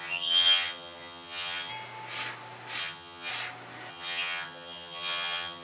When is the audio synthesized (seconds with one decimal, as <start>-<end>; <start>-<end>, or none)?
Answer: 0.0-1.7; 2.8-3.3; 3.9-5.6